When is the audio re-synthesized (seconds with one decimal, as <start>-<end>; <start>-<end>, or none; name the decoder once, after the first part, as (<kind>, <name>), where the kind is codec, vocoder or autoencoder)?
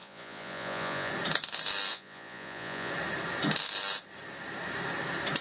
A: 0.0-1.1 (vocoder, Vocos); 1.9-2.9